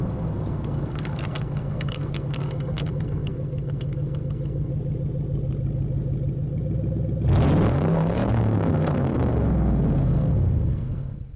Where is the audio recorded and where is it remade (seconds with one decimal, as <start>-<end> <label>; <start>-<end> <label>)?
0.0-4.7 remade; 4.7-7.7 recorded; 7.7-11.4 remade